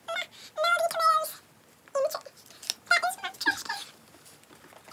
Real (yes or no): yes